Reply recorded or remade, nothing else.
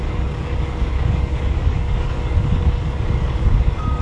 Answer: remade